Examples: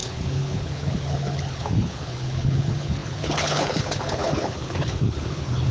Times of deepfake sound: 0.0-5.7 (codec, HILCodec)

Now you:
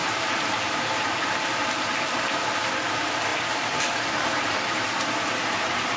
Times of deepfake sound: 0.0-2.2 (vocoder, BigVGAN v2); 3.3-6.0

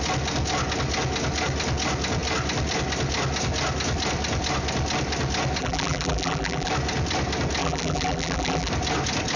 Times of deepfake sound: 5.6-6.7 (vocoder, BigVGAN v2); 7.6-8.7

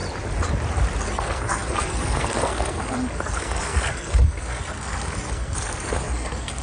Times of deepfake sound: 1.0-6.6 (codec, SNAC)